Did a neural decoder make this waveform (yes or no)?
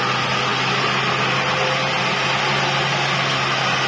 no